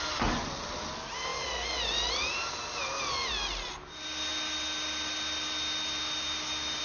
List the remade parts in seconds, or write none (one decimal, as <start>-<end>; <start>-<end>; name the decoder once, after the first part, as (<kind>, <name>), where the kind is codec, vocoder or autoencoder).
none